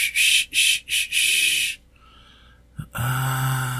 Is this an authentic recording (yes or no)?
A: yes